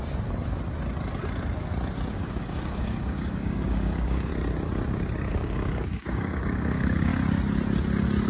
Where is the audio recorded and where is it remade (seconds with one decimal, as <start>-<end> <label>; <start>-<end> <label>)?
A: 0.0-2.1 recorded; 2.1-4.3 remade; 4.3-5.3 recorded; 5.3-7.1 remade; 7.1-8.3 recorded